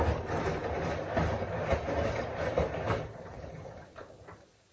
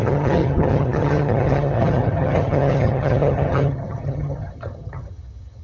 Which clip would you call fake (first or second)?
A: second